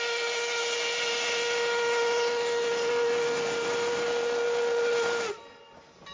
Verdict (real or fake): real